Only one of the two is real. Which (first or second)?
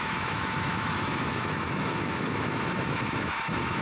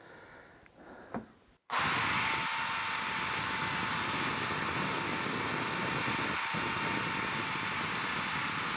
second